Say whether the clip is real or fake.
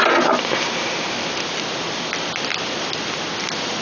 real